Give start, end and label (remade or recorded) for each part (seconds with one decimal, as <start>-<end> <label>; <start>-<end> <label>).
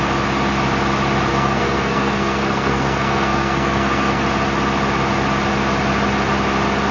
0.0-1.3 recorded; 1.3-4.2 remade; 4.2-6.9 recorded